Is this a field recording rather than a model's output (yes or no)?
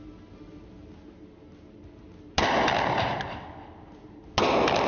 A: yes